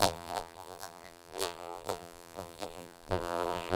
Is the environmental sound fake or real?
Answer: fake